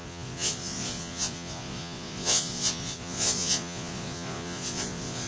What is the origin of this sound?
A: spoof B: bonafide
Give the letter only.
A